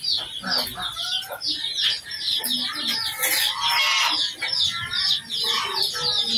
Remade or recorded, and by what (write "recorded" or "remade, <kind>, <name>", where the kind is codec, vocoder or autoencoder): recorded